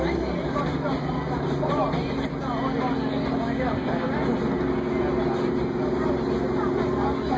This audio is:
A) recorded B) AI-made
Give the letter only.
A